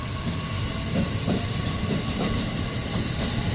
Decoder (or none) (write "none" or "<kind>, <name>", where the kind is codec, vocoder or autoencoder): none